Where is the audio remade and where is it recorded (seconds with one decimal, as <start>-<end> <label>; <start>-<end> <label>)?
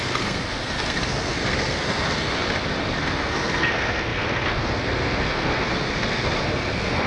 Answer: 0.0-2.4 remade; 2.4-3.0 recorded; 3.0-7.1 remade